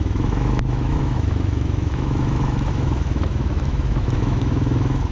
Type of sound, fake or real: fake